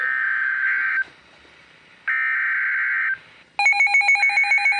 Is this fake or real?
real